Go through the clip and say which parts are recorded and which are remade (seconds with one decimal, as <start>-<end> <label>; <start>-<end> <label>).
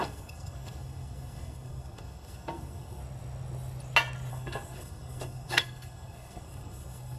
0.0-3.0 remade; 3.0-4.3 recorded; 4.3-7.2 remade